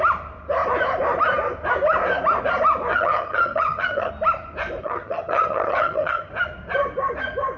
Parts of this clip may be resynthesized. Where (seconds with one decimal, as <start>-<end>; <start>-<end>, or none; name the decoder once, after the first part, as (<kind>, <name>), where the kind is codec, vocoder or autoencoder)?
2.9-4.1 (vocoder, HiFi-GAN); 4.8-6.3

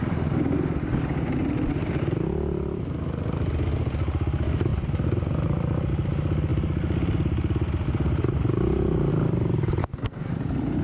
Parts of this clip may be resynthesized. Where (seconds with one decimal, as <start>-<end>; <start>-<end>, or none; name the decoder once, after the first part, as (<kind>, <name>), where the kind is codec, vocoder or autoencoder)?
9.8-10.3 (codec, SNAC)

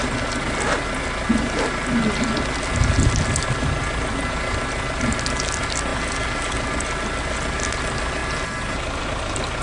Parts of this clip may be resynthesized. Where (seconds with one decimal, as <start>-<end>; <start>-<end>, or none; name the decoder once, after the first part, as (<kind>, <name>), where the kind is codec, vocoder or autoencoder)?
none

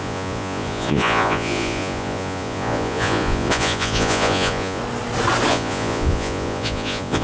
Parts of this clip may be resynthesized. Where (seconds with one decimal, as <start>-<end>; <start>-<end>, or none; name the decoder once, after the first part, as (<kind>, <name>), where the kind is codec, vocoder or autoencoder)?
0.0-4.8 (vocoder, Vocos); 5.5-7.2

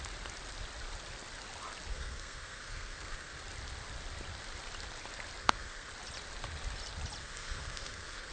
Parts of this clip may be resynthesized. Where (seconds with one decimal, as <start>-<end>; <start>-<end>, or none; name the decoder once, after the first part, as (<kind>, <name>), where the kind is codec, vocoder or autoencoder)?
1.9-3.4 (codec, SNAC); 5.4-5.9; 7.2-8.3

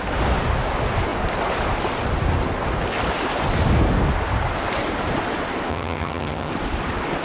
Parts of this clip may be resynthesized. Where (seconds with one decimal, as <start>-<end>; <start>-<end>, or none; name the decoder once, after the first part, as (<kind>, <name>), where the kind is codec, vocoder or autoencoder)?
5.7-6.5 (vocoder, HiFi-GAN)